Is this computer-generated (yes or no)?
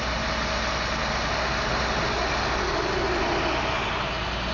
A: no